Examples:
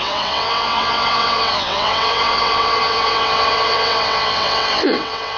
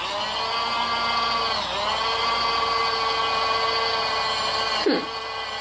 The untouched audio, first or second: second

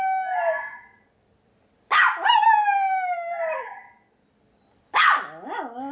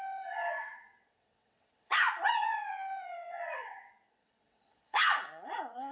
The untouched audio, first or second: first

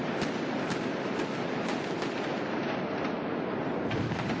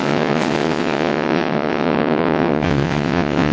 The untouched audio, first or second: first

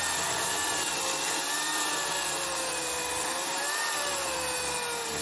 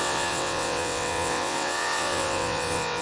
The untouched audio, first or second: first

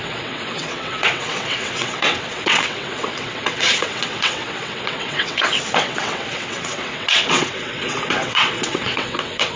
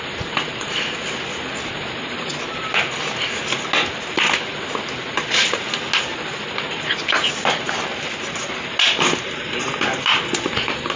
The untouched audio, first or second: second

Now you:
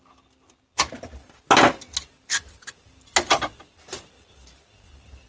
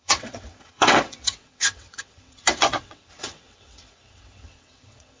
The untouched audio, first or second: first